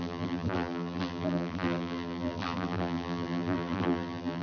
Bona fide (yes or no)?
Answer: no